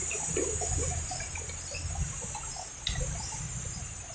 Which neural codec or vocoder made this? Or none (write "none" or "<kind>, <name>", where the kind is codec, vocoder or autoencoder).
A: none